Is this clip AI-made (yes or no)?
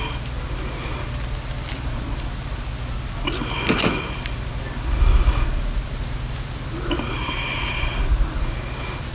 no